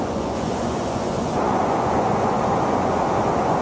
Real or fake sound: fake